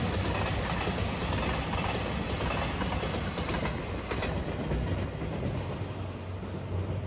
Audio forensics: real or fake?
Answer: real